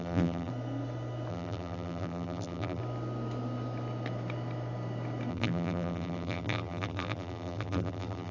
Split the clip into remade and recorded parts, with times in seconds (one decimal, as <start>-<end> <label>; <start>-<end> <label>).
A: 0.0-0.5 remade; 0.5-1.3 recorded; 1.3-2.8 remade; 2.8-5.3 recorded; 5.3-8.3 remade